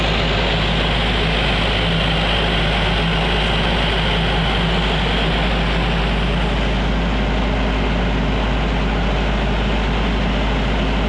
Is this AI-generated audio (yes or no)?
no